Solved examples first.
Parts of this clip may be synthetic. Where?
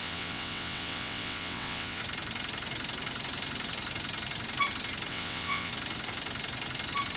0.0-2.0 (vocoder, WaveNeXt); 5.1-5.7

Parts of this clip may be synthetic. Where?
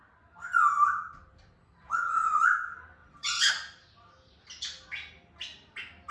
1.8-2.4 (vocoder, WaveNeXt); 3.0-3.5